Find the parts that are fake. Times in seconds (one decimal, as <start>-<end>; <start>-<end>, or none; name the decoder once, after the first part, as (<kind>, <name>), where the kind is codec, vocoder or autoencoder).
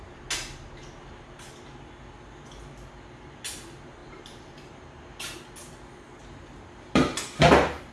4.0-5.0 (vocoder, BigVGAN v2); 6.2-7.9